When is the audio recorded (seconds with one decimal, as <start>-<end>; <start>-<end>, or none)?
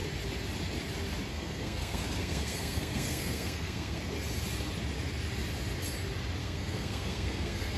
0.0-1.3; 4.0-6.4